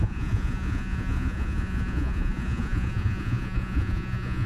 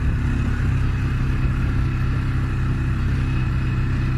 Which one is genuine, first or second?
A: second